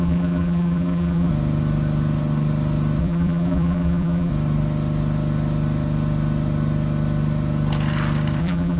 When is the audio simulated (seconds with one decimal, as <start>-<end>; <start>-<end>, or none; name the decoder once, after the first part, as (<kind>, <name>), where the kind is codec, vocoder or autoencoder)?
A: 0.0-1.3 (vocoder, BigVGAN v2); 3.0-4.3; 8.4-8.8